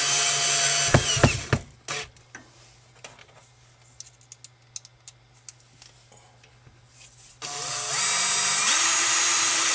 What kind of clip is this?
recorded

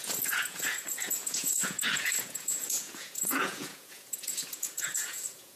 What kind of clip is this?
remade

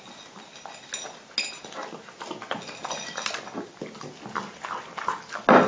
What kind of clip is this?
recorded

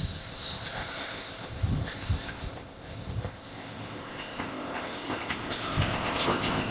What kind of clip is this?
remade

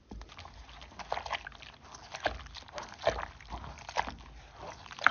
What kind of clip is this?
recorded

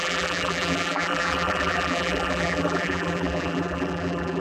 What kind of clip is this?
remade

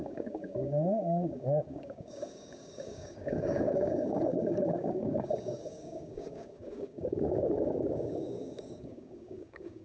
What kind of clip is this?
remade